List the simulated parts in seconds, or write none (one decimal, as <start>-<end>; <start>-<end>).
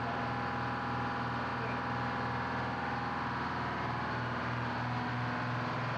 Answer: none